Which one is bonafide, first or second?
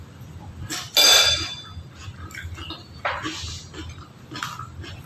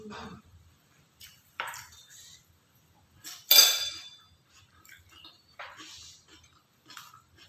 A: first